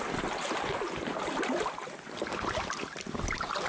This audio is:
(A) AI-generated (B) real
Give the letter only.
B